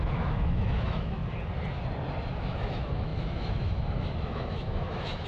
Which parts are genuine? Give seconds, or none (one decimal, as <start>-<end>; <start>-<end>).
1.2-2.3